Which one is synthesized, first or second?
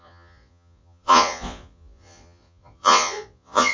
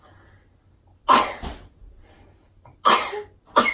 first